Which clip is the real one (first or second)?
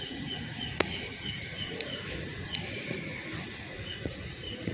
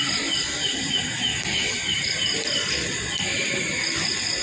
second